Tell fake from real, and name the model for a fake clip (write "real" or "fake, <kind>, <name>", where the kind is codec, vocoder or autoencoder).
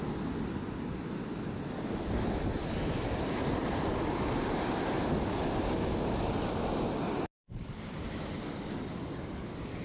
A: real